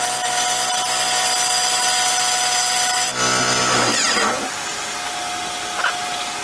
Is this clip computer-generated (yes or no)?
no